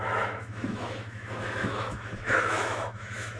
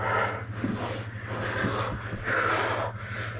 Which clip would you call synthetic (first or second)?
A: first